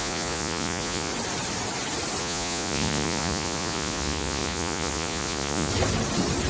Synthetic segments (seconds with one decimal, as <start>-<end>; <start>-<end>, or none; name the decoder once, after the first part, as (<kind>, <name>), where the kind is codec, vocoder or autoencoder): 0.0-1.1 (vocoder, Vocos); 2.2-5.7